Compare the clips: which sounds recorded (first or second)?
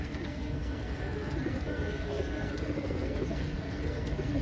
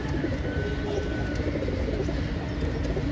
second